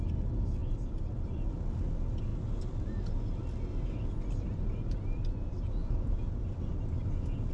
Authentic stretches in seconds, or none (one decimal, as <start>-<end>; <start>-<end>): 0.0-5.8; 6.3-7.5